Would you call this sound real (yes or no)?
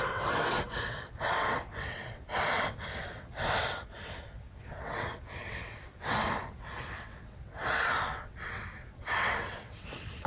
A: no